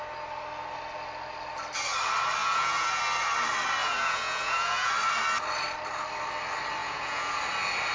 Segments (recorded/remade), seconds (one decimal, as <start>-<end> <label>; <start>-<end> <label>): 0.0-2.4 recorded; 2.4-3.0 remade; 3.0-3.8 recorded; 3.8-4.9 remade; 4.9-6.8 recorded; 6.8-7.4 remade; 7.4-7.9 recorded

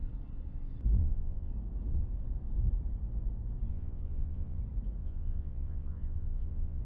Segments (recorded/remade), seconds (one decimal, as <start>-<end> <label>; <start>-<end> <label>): 0.0-1.0 recorded; 1.0-1.5 remade; 1.5-3.7 recorded; 3.7-4.6 remade; 4.6-5.0 recorded; 5.0-6.8 remade